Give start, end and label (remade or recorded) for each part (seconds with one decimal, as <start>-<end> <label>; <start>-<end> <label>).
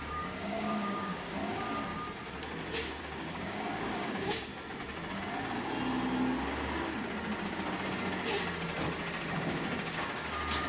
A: 0.0-1.4 remade; 1.4-3.0 recorded; 3.0-4.5 remade; 4.5-9.4 recorded; 9.4-10.7 remade